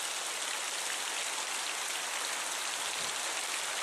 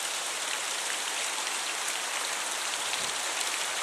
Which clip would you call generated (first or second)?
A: second